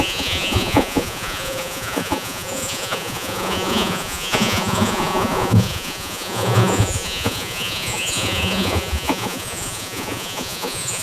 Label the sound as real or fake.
fake